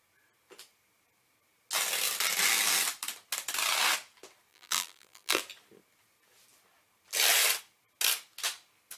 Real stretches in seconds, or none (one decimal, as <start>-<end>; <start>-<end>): 0.0-4.5; 5.4-9.0